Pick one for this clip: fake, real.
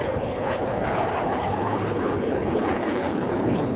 fake